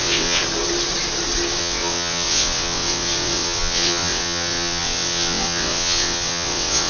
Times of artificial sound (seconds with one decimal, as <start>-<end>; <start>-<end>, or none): 0.0-0.4; 1.6-6.9